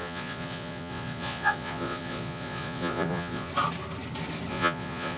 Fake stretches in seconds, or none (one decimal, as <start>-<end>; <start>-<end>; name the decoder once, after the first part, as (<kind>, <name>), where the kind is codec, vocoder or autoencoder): 0.0-3.5 (vocoder, Vocos); 4.5-5.2